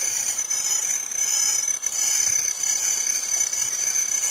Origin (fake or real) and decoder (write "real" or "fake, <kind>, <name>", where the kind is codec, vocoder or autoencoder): fake, vocoder, BigVGAN v2